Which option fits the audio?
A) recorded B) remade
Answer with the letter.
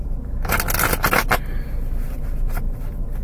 A